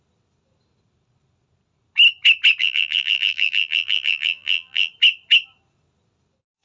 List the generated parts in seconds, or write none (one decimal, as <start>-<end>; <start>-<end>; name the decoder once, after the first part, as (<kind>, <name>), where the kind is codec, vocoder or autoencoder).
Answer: 2.6-4.9 (vocoder, BigVGAN v2)